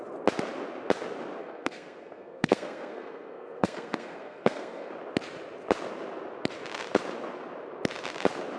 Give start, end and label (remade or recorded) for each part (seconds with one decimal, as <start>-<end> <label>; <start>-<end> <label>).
0.0-1.4 recorded; 1.4-4.9 remade; 4.9-8.6 recorded